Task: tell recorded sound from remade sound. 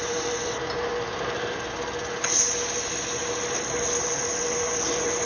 recorded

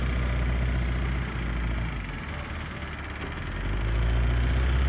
recorded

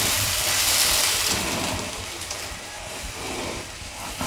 remade